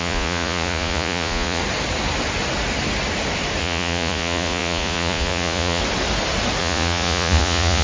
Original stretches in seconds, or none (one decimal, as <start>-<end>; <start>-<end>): 1.6-3.6; 5.8-6.6